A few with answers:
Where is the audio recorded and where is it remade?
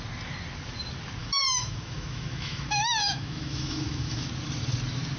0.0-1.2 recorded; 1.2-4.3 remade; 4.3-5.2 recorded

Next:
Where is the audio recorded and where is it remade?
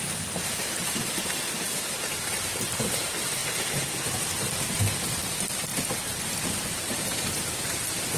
0.0-3.4 remade; 3.4-4.4 recorded; 4.4-5.7 remade; 5.7-6.4 recorded; 6.4-8.2 remade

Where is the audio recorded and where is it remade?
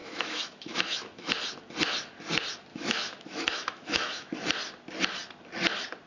0.0-1.3 remade; 1.3-2.7 recorded; 2.7-4.3 remade; 4.3-6.1 recorded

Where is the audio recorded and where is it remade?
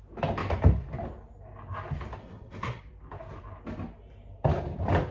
0.0-2.2 recorded; 2.2-2.8 remade; 2.8-5.1 recorded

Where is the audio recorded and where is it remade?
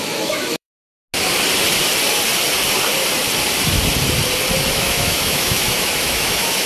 0.0-0.7 remade; 0.7-4.7 recorded; 4.7-6.7 remade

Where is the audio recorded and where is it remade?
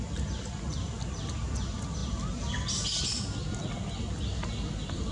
0.0-5.1 recorded